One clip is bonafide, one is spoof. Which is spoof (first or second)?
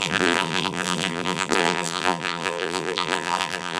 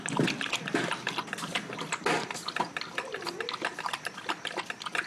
first